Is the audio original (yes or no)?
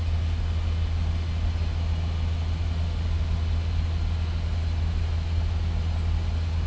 yes